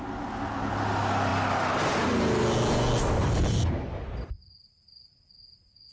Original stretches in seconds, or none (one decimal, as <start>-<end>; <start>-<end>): 0.0-5.9